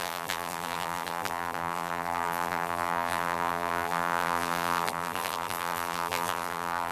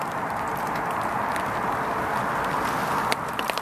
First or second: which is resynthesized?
first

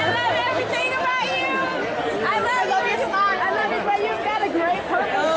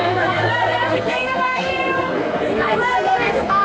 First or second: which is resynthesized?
second